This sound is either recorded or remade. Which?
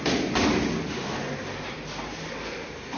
recorded